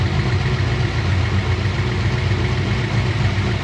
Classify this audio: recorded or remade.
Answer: recorded